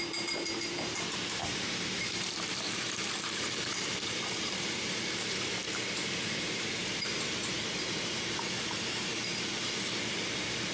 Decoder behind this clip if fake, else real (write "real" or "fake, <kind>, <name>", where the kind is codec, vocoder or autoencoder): fake, vocoder, BigVGAN v2